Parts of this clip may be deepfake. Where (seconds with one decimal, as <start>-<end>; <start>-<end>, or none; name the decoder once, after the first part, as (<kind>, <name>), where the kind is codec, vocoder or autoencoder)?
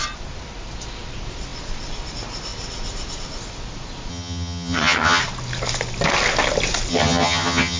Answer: 4.1-5.2 (vocoder, HiFi-GAN); 6.9-7.8